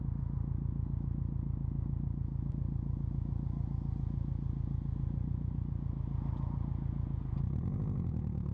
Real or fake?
real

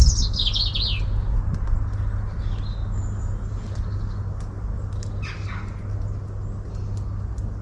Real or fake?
real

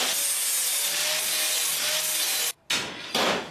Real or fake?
real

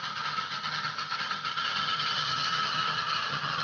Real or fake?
fake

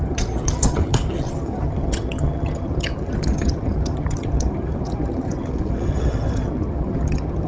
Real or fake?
fake